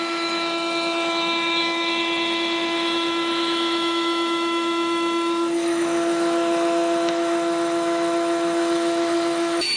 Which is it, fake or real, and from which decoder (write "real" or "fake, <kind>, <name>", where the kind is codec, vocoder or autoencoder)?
fake, autoencoder, DAC-VAE